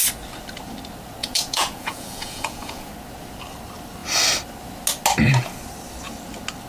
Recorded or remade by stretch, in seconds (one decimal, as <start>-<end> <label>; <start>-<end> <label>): 0.0-1.2 recorded; 1.2-2.9 remade; 2.9-6.7 recorded